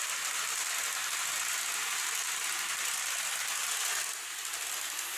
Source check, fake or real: real